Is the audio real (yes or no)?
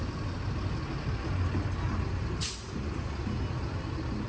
yes